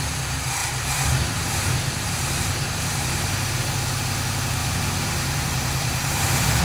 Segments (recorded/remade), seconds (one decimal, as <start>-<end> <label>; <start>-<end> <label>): 0.0-0.6 recorded; 0.6-3.6 remade; 3.6-4.6 recorded; 4.6-6.6 remade